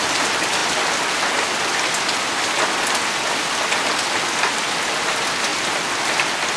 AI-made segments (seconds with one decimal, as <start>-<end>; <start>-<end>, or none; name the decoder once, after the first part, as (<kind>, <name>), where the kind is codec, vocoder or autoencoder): none